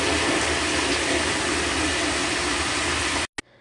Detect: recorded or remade recorded